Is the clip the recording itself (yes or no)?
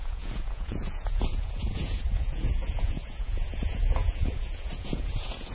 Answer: no